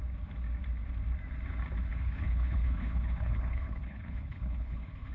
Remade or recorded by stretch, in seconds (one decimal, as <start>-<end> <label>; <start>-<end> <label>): 0.0-1.9 recorded; 1.9-5.1 remade